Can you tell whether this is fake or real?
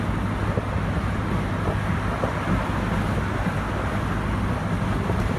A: real